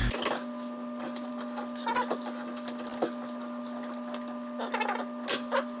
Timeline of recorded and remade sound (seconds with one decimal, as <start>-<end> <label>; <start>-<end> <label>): 0.0-5.8 recorded